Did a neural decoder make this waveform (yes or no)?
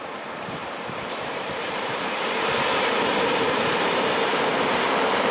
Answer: yes